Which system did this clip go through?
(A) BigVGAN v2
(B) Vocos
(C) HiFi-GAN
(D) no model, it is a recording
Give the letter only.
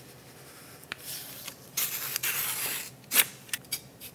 A